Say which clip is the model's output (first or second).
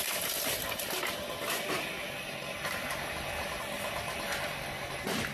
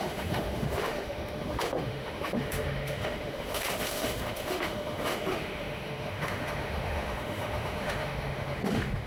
second